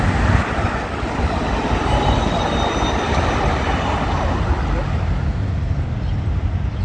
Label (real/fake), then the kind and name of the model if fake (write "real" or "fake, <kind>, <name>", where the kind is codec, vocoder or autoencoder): real